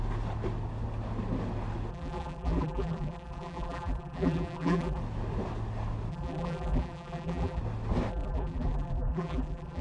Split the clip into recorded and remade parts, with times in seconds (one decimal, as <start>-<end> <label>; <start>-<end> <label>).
0.0-1.9 recorded; 1.9-5.0 remade; 5.0-6.1 recorded; 6.1-7.6 remade; 7.6-8.1 recorded; 8.1-9.8 remade